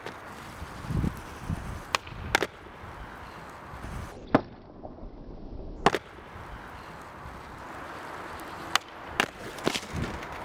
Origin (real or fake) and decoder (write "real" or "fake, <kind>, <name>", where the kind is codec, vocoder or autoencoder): real